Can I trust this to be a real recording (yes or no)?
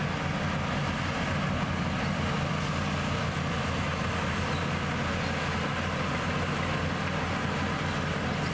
yes